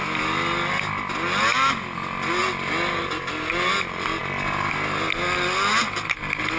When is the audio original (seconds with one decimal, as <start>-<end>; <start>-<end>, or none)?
0.0-6.6